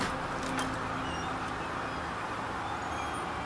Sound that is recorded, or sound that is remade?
recorded